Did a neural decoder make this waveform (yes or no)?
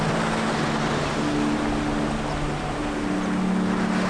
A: no